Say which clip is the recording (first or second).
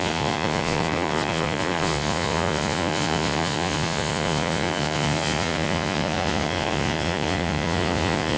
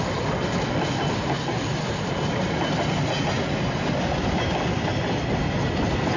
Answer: second